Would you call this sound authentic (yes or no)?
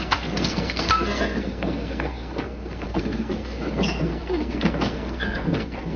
no